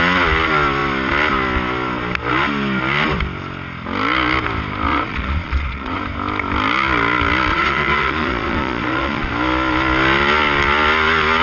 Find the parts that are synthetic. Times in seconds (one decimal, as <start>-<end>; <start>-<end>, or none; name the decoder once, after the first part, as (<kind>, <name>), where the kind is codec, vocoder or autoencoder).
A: 4.9-6.0 (vocoder, Vocos); 7.5-9.3